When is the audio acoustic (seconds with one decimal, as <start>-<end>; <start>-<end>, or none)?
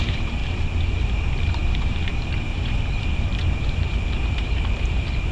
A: 0.4-1.0; 3.3-4.3